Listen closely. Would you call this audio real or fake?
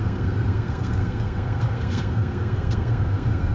fake